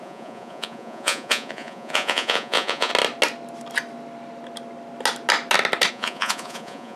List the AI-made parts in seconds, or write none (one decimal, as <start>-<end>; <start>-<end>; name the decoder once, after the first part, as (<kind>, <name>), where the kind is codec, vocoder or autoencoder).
0.0-2.9 (vocoder, Vocos); 5.9-7.0